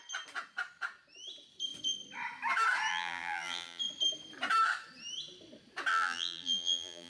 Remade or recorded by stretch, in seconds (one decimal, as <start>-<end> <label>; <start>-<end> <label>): 0.0-2.9 recorded; 2.9-3.8 remade; 3.8-5.9 recorded; 5.9-7.1 remade